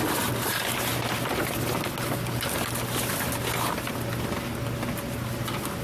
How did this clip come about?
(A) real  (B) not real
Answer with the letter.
A